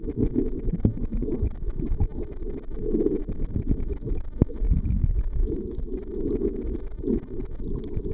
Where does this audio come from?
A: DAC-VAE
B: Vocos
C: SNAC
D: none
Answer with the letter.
D